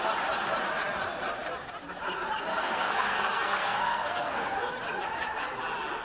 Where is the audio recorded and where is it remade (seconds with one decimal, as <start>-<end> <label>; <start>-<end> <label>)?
0.0-2.5 recorded; 2.5-4.7 remade; 4.7-6.0 recorded